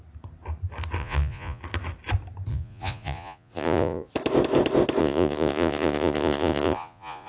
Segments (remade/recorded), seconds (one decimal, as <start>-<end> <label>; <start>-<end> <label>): 0.0-1.0 recorded; 1.0-1.6 remade; 1.6-2.5 recorded; 2.5-4.1 remade; 4.1-5.0 recorded; 5.0-7.3 remade